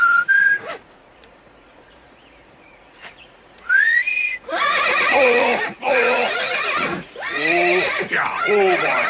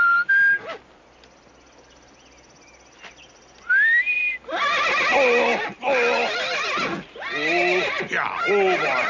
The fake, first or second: first